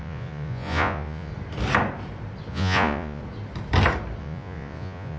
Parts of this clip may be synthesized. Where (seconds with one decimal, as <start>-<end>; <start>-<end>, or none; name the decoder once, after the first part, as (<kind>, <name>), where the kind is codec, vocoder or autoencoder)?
0.0-1.3 (vocoder, Vocos); 2.5-3.2; 4.2-5.2